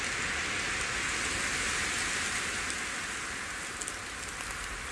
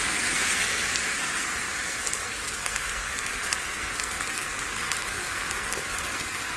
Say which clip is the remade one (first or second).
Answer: second